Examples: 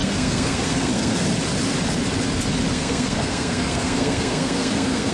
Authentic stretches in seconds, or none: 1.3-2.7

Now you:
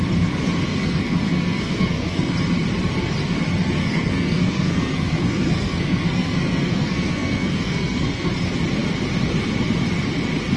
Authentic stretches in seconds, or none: 0.0-0.7; 2.3-3.8; 8.3-10.6

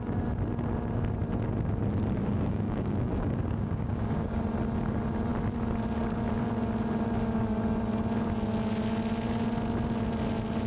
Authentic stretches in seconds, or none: 0.0-2.2; 4.4-10.7

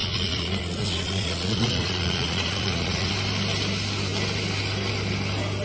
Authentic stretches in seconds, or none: 3.1-5.6

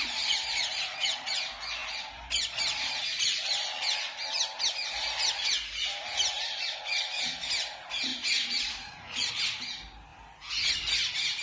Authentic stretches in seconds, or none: 0.0-0.5; 1.3-8.1; 9.3-11.4

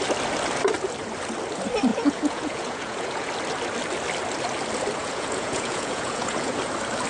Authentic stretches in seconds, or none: 0.0-1.9; 3.3-5.0; 6.6-7.1

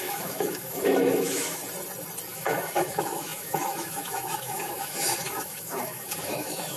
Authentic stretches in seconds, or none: 1.6-2.3